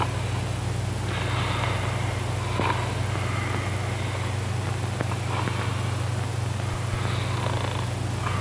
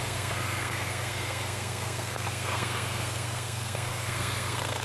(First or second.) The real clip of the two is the first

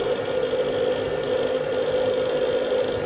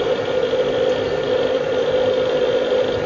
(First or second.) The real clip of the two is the first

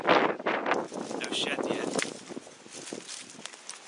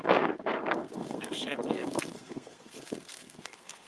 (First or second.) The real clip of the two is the first